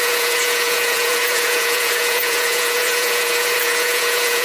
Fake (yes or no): yes